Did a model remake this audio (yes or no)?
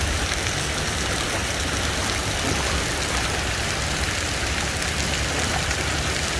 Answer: no